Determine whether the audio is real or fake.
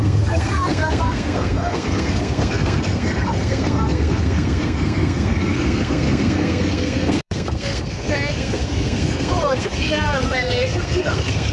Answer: fake